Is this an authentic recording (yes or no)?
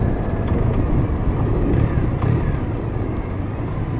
yes